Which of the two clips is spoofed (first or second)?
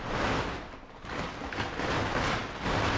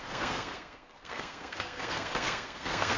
second